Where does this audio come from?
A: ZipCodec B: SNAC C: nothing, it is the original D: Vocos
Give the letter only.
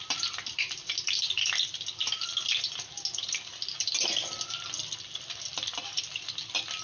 C